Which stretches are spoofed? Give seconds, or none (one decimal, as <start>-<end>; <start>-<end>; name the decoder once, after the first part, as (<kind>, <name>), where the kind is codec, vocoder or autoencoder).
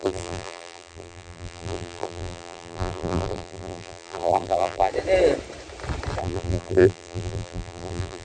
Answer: 0.0-4.9 (vocoder, BigVGAN v2); 6.2-8.2